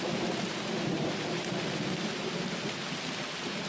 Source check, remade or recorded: recorded